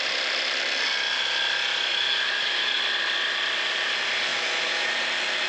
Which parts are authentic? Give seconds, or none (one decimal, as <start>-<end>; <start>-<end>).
0.0-1.9; 2.8-4.3; 4.9-5.5